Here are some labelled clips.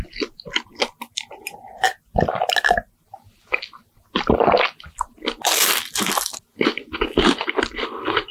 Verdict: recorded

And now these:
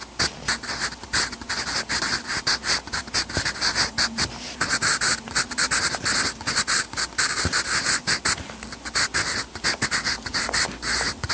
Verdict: recorded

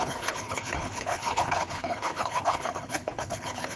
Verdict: remade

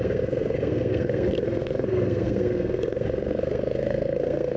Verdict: remade